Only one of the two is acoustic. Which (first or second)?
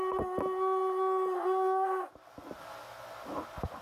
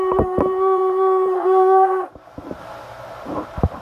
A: first